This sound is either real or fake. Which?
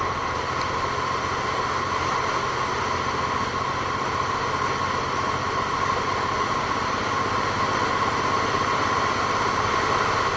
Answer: real